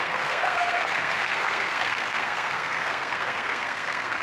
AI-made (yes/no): yes